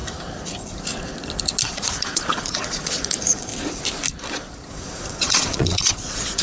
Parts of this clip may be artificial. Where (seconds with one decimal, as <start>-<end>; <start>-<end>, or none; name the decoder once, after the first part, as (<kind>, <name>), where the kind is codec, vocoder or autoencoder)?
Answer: 1.6-3.5 (vocoder, Vocos); 4.7-6.4